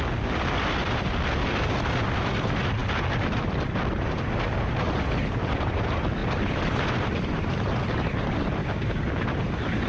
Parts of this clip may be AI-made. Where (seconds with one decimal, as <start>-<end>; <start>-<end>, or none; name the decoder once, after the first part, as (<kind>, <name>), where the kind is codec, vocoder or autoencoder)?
8.6-9.1 (codec, DAC)